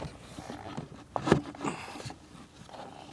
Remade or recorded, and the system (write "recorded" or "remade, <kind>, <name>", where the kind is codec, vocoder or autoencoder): recorded